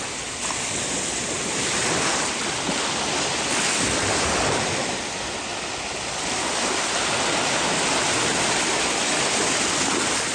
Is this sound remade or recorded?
recorded